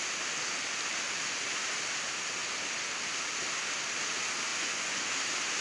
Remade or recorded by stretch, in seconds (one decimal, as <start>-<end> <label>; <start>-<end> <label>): 0.0-4.5 recorded; 4.5-5.1 remade; 5.1-5.6 recorded